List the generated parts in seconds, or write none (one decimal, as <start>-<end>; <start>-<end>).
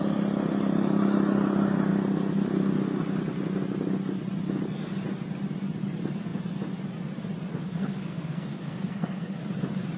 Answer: 7.6-9.4